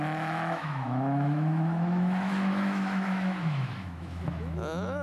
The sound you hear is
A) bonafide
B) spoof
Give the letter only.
B